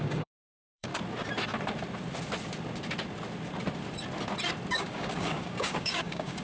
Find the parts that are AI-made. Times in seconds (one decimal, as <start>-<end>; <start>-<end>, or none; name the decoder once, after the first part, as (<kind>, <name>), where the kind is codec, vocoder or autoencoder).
0.0-0.9 (codec, DAC); 4.7-6.4